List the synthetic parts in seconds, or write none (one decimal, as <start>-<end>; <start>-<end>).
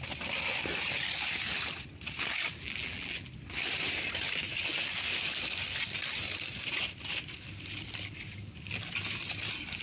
2.6-3.3